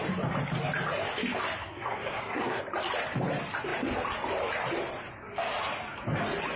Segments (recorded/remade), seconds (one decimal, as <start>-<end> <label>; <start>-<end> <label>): 0.0-1.6 recorded; 1.6-2.6 remade; 2.6-6.6 recorded